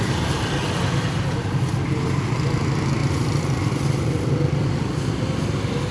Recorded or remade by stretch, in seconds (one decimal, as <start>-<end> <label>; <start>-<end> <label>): 0.0-5.9 recorded